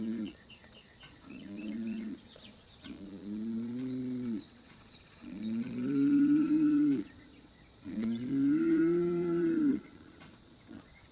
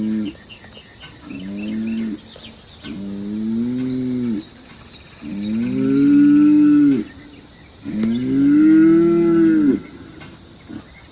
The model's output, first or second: first